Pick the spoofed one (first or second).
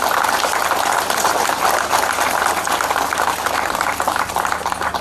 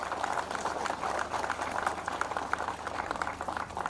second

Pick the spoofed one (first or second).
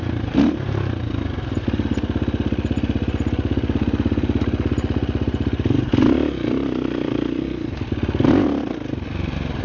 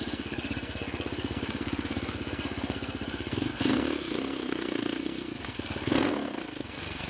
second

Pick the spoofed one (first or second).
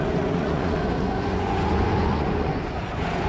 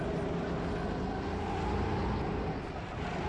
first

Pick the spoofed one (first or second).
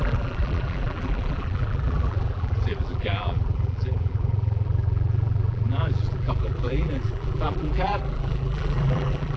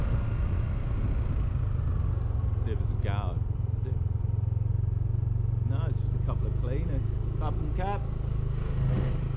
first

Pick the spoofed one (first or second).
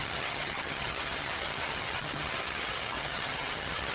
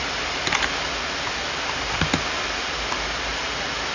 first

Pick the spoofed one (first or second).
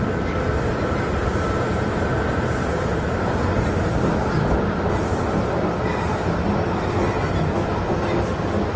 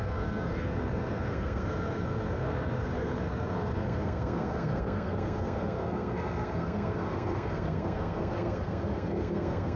second